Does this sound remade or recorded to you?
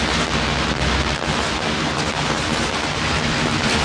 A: recorded